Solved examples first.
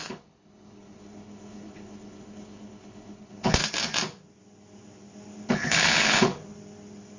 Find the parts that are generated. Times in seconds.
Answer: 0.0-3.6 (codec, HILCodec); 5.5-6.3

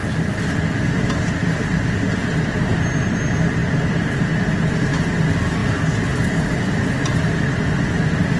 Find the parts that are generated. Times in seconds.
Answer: none